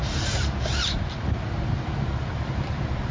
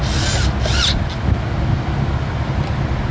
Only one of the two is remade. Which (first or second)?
first